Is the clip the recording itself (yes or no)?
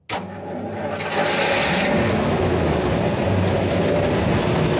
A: yes